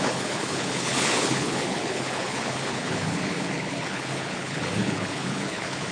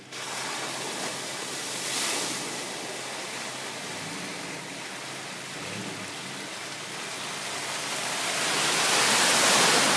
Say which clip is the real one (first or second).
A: second